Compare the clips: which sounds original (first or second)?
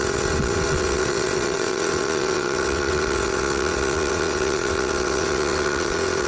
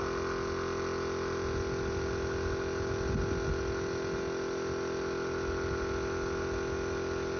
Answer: second